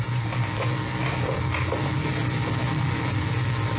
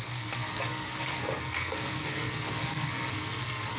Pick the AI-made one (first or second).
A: second